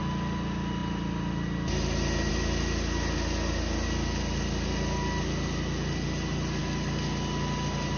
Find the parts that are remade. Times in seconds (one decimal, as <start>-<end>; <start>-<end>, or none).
none